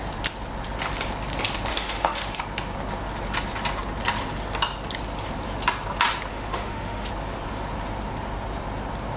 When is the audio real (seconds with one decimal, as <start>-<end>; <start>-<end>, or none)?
0.0-1.7; 2.4-6.3; 7.1-9.2